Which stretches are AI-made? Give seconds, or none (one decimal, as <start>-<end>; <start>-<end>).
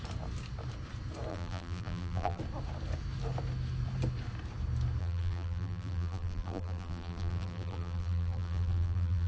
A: 1.3-2.4; 5.0-9.3